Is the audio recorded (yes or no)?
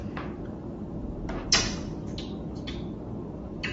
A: yes